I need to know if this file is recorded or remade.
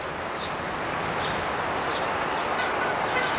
recorded